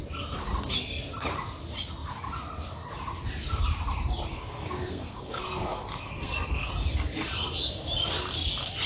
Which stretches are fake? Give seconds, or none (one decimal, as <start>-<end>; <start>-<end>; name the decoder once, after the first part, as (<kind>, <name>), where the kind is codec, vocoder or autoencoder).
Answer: 4.3-6.7 (codec, SNAC)